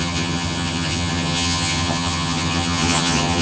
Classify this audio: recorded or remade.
remade